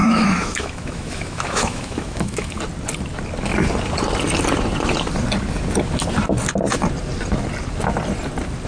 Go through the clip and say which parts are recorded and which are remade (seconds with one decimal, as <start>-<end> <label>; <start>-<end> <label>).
0.0-2.6 remade; 2.6-8.7 recorded